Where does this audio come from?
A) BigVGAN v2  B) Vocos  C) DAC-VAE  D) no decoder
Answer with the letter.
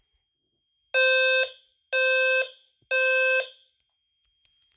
D